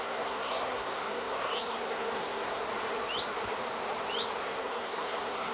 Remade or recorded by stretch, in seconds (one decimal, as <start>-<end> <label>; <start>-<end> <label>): 0.0-2.6 remade; 2.6-4.4 recorded; 4.4-5.5 remade

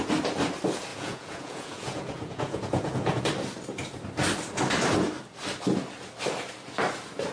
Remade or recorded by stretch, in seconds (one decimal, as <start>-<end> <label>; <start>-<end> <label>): 0.0-0.9 recorded; 0.9-3.2 remade; 3.2-7.3 recorded

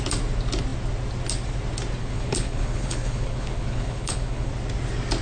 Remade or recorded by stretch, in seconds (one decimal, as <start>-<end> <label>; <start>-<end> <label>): 0.0-2.0 recorded; 2.0-4.5 remade; 4.5-5.2 recorded

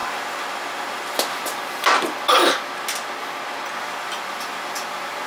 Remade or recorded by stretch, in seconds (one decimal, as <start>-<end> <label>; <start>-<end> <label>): 0.0-5.3 recorded